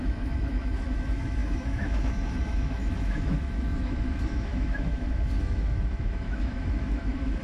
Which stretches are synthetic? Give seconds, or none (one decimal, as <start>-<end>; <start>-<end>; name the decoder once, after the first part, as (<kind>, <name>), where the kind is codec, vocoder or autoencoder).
0.0-7.4 (autoencoder, DAC-VAE)